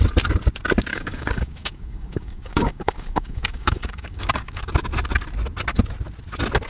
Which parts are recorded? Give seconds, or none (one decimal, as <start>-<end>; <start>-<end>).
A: 0.0-0.9; 4.7-6.7